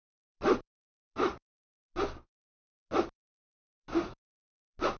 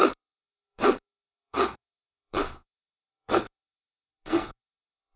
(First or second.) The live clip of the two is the first